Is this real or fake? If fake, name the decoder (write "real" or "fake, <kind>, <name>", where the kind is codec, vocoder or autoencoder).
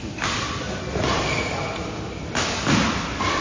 real